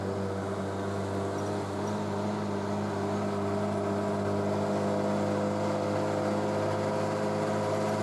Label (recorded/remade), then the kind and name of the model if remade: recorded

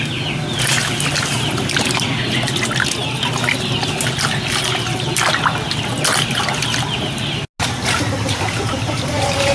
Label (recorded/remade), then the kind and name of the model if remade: recorded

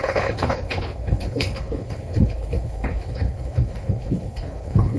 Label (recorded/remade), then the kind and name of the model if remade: remade, codec, HILCodec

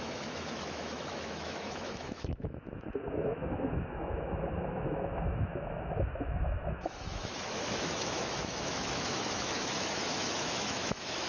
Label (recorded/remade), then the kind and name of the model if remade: remade, autoencoder, DAC-VAE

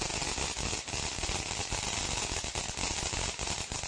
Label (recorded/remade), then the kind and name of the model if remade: recorded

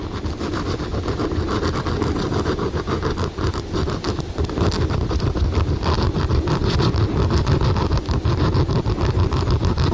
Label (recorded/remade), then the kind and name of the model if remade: recorded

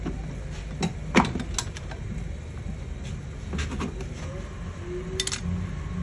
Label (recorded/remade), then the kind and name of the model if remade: recorded